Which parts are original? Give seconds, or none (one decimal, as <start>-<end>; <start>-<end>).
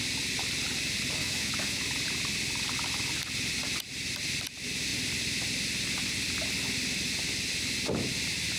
0.0-1.2; 1.8-8.6